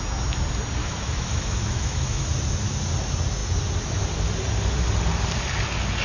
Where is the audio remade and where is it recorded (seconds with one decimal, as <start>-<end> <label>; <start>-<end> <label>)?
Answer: 0.0-0.8 recorded; 0.8-2.2 remade; 2.2-6.0 recorded